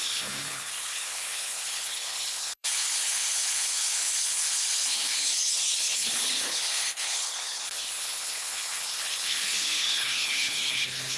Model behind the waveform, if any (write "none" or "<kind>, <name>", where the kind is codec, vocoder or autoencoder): codec, HILCodec